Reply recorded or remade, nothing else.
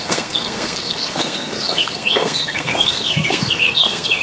remade